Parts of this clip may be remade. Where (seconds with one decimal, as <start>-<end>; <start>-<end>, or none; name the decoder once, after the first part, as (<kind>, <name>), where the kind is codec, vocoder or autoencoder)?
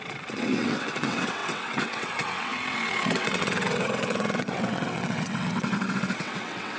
0.0-6.8 (vocoder, WaveNeXt)